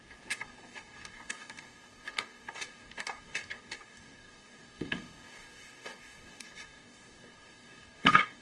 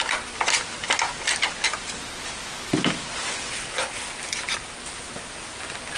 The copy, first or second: first